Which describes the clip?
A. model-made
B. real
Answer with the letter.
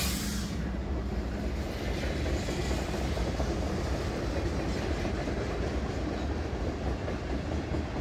B